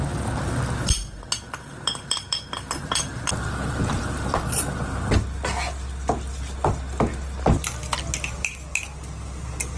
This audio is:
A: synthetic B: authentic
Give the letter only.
B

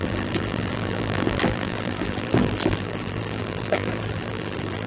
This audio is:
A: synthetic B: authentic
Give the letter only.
A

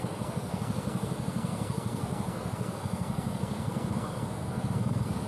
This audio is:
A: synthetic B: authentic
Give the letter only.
A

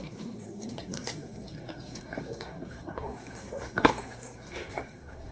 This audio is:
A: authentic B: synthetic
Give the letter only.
B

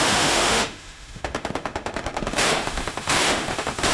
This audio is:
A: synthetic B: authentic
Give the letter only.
A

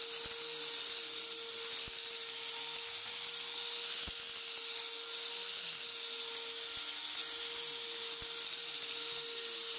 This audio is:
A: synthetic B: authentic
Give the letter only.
B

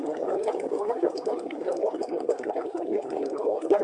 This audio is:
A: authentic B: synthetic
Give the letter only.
B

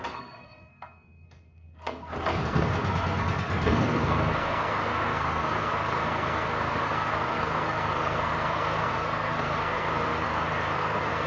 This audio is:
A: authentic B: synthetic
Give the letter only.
B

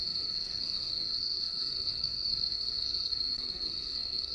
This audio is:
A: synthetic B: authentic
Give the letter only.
A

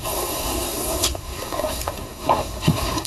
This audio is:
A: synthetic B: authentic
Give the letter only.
A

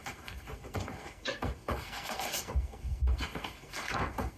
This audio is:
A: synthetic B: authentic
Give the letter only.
A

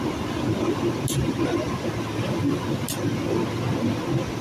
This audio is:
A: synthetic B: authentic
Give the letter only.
B